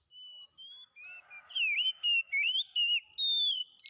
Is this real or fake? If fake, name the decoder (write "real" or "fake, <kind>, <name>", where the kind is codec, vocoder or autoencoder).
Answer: real